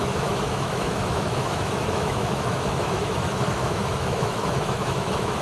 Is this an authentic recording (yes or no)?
no